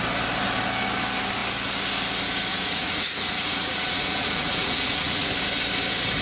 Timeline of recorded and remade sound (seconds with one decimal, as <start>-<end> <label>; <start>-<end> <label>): 0.0-2.5 recorded; 2.5-5.3 remade; 5.3-6.2 recorded